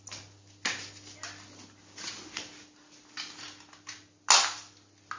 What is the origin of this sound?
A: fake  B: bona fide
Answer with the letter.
B